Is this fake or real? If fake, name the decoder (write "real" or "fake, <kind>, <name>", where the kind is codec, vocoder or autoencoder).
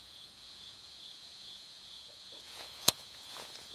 fake, vocoder, Vocos